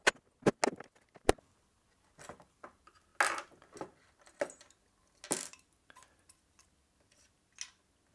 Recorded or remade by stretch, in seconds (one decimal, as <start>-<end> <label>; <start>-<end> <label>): 0.0-8.1 recorded